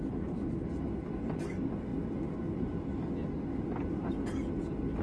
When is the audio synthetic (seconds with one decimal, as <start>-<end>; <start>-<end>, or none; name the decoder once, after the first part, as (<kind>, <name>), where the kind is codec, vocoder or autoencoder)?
none